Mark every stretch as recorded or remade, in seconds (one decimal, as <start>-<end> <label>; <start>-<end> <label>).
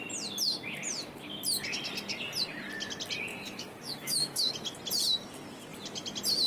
0.0-3.3 recorded; 3.3-4.5 remade; 4.5-6.5 recorded